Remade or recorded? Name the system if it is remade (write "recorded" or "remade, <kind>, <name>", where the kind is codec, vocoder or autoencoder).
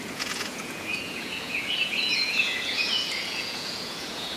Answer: remade, vocoder, Vocos